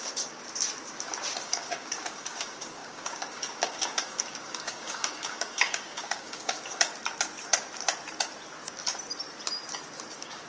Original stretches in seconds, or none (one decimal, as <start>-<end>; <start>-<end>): 0.4-1.4; 6.9-10.1